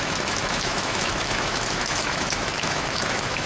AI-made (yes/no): yes